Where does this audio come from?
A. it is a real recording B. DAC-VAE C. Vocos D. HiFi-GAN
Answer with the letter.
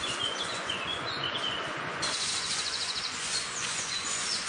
C